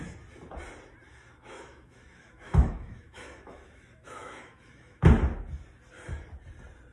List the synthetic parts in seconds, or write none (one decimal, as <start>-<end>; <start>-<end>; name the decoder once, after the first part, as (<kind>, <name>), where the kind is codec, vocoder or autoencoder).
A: 1.1-5.0 (autoencoder, DAC-VAE)

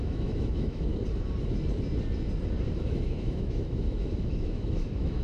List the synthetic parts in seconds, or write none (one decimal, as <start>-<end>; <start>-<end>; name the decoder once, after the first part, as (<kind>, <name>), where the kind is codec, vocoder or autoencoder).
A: 0.0-0.9 (autoencoder, DAC-VAE); 2.8-5.2